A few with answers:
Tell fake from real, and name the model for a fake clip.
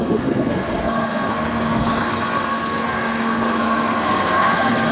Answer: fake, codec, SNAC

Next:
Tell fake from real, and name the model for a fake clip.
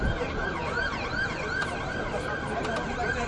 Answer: real